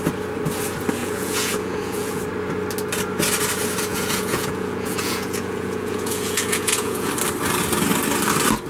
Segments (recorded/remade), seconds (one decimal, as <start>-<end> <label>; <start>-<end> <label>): 0.0-1.0 recorded; 1.0-2.2 remade; 2.2-3.9 recorded; 3.9-7.1 remade; 7.1-8.7 recorded

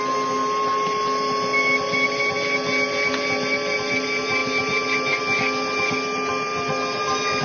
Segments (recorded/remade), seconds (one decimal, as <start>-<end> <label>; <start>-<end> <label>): 0.0-7.4 recorded

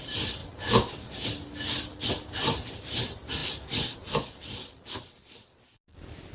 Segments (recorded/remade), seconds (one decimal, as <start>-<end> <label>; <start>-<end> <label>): 0.0-6.3 recorded

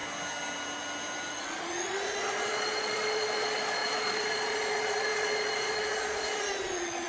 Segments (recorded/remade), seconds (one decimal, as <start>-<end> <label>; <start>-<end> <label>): 0.0-1.3 recorded; 1.3-7.1 remade